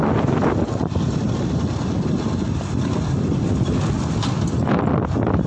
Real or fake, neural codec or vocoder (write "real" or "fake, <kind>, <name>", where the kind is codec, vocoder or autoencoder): real